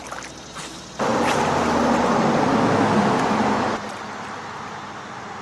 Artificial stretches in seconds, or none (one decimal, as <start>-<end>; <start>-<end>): none